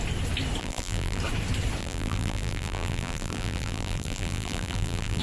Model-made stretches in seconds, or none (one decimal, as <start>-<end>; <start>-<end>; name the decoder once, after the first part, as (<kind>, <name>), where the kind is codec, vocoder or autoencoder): 0.6-1.2 (vocoder, BigVGAN v2); 1.8-5.2